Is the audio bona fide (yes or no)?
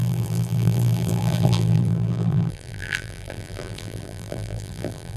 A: no